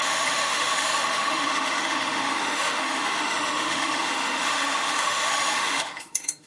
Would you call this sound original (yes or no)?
no